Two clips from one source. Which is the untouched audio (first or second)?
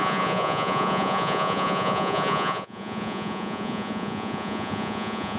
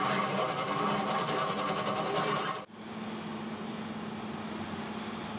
second